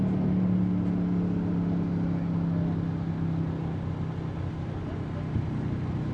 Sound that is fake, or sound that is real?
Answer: real